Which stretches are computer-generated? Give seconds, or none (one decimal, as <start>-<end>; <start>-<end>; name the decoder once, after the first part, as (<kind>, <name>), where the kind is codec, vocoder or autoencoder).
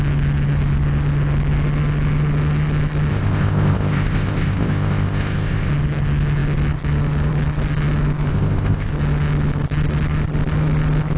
3.1-5.7 (codec, ZipCodec); 8.3-8.9